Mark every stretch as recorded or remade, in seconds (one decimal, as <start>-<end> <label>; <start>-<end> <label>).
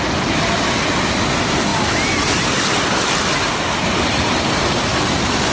0.0-5.5 recorded